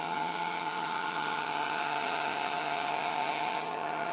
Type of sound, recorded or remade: remade